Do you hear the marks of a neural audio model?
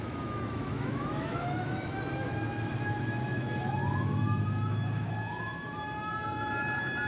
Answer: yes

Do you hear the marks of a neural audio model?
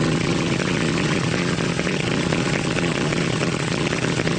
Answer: yes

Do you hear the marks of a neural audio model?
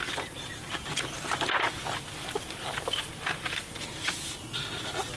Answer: no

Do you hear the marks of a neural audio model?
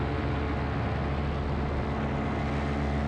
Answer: no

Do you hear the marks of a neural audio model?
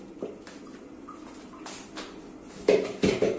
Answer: no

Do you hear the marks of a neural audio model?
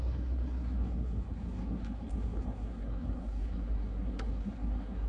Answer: yes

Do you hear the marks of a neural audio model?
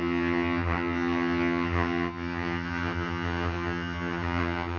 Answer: yes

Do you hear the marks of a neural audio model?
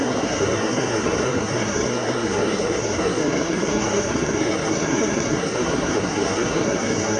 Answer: yes